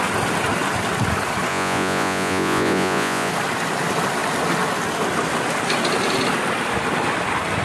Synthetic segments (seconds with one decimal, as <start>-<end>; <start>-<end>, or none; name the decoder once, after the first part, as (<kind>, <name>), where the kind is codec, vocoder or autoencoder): 1.5-3.3 (vocoder, Vocos)